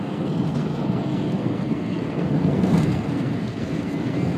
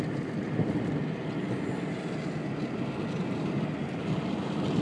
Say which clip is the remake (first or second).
first